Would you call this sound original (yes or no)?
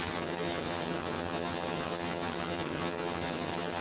no